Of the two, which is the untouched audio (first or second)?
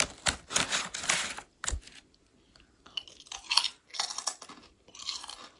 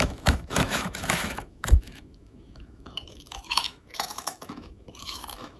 first